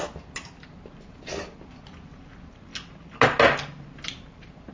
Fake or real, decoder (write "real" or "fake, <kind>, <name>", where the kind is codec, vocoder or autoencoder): real